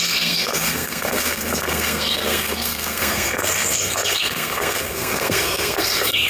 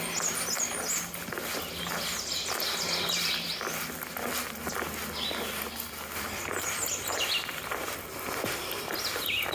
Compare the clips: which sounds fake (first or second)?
first